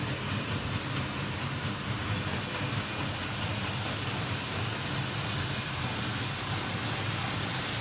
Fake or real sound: real